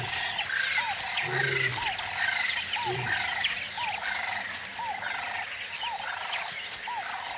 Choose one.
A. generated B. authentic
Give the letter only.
B